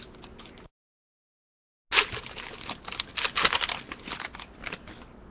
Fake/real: real